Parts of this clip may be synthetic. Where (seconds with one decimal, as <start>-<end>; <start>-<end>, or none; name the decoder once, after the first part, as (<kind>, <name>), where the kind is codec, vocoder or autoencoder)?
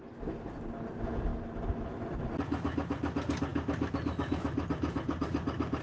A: none